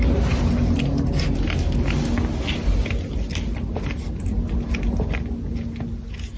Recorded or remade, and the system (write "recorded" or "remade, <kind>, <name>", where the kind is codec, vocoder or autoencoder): recorded